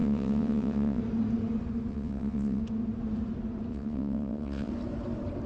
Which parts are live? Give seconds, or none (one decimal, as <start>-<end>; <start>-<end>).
1.0-1.9; 2.6-3.7; 4.7-5.5